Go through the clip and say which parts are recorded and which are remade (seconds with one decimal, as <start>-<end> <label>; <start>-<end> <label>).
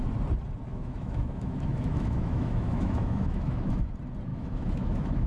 0.0-0.7 recorded; 0.7-3.9 remade; 3.9-4.3 recorded; 4.3-5.3 remade